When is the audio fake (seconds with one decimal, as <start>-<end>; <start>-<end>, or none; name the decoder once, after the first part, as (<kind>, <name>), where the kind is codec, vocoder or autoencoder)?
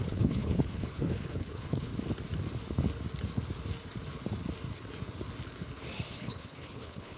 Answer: 0.0-1.9 (codec, HILCodec); 6.1-7.2